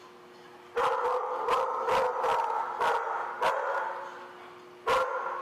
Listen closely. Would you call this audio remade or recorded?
recorded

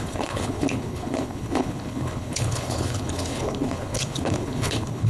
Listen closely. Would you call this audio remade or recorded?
remade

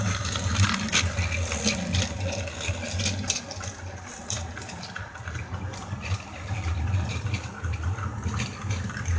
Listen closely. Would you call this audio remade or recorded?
recorded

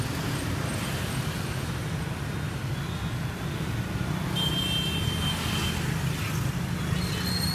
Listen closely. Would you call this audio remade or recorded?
recorded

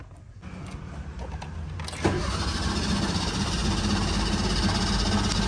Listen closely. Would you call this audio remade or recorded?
recorded